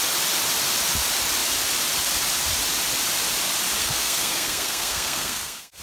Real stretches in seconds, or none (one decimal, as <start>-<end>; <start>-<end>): 0.0-3.8